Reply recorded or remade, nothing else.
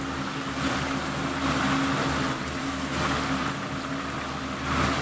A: recorded